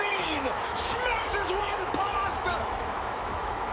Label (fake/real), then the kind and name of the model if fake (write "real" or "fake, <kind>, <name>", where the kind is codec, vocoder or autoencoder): fake, autoencoder, DAC-VAE